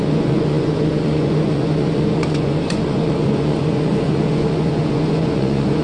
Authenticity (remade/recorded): remade